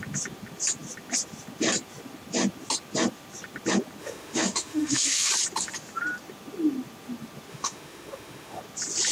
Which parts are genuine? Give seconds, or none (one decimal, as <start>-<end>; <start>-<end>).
0.0-4.0; 5.3-7.5; 8.6-9.1